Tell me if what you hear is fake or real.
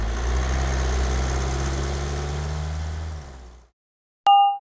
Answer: real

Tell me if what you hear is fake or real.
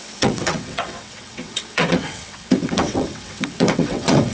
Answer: fake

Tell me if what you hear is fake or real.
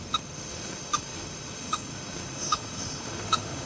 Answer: fake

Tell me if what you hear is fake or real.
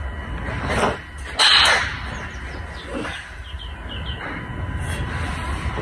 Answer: real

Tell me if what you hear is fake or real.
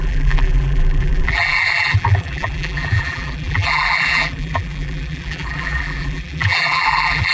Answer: fake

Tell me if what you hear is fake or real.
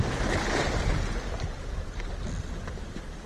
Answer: real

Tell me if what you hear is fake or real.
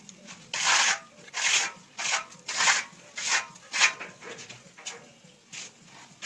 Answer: real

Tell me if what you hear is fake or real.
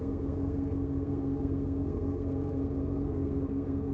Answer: fake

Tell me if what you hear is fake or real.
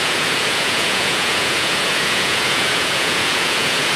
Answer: fake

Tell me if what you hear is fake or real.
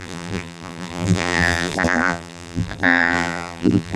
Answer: fake